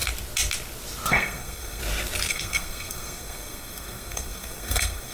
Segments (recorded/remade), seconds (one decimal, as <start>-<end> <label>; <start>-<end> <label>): 0.0-1.1 recorded; 1.1-1.8 remade; 1.8-2.3 recorded; 2.3-5.1 remade